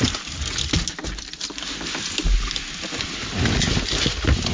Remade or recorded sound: recorded